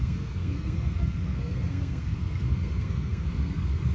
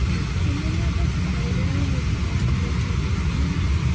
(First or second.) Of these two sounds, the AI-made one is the first